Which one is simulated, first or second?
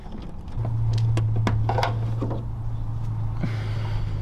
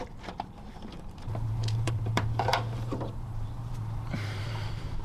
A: second